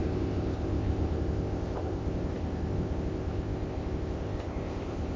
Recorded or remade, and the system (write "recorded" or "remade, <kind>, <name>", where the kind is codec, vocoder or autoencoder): remade, codec, ZipCodec